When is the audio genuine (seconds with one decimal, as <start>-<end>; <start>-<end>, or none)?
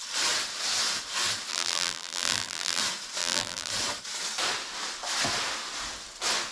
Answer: 0.0-1.5; 2.8-3.2; 3.7-6.5